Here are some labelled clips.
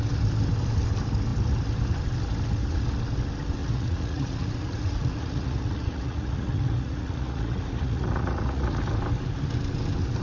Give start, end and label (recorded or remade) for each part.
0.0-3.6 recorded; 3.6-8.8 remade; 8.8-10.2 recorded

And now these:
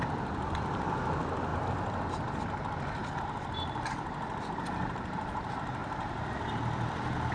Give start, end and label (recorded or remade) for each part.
0.0-5.8 recorded; 5.8-6.3 remade; 6.3-7.3 recorded

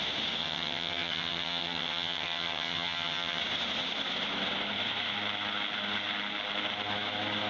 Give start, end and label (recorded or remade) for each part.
0.0-0.4 recorded; 0.4-3.4 remade; 3.4-7.5 recorded

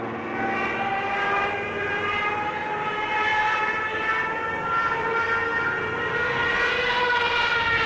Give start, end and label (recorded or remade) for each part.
0.0-7.9 recorded